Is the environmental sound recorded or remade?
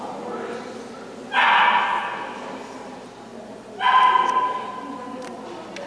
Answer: recorded